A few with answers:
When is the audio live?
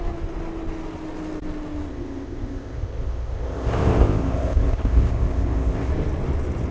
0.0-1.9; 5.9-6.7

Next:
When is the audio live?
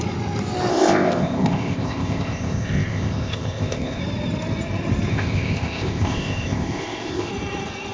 0.0-0.7; 4.0-5.1; 7.3-7.9